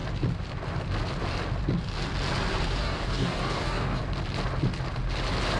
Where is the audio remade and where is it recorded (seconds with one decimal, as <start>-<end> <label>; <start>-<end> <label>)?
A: 0.0-2.8 recorded; 2.8-4.0 remade; 4.0-5.6 recorded